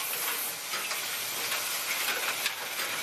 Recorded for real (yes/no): yes